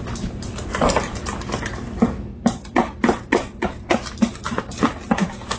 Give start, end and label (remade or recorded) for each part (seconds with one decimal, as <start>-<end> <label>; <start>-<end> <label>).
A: 0.0-5.6 recorded